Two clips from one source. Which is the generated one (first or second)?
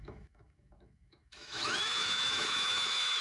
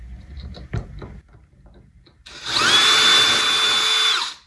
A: first